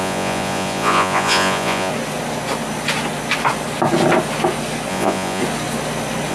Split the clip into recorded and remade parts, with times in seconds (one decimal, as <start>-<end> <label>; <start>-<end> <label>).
0.0-1.9 remade; 1.9-4.9 recorded; 4.9-5.4 remade; 5.4-6.3 recorded